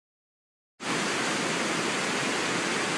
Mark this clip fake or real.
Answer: real